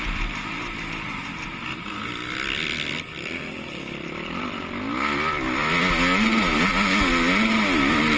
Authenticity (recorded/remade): recorded